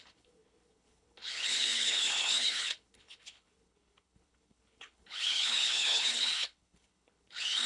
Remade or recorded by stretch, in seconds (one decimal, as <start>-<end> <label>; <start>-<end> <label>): 0.0-7.7 remade